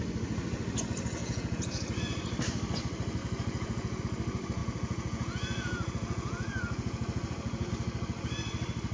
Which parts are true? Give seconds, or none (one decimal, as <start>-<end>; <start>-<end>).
0.0-1.2; 2.0-3.2; 4.0-4.6; 7.7-8.9